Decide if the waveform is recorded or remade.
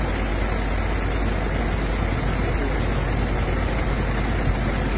recorded